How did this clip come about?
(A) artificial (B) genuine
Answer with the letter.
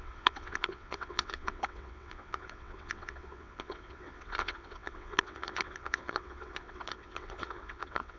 A